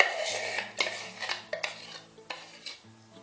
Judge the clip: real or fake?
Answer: real